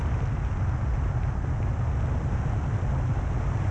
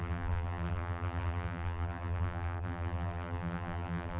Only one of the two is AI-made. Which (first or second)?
second